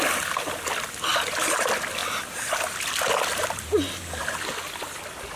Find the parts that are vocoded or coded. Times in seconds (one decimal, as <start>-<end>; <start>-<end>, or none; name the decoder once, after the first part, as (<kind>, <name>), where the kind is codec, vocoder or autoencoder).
none